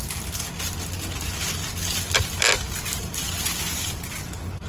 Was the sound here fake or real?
real